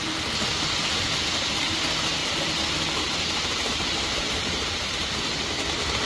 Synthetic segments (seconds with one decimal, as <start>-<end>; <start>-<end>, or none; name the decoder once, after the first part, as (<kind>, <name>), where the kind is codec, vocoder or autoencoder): 2.2-5.2 (vocoder, BigVGAN v2)

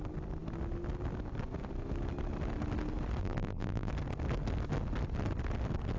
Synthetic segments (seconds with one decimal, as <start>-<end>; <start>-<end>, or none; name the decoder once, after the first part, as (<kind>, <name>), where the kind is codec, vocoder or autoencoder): 3.2-3.9 (vocoder, BigVGAN v2)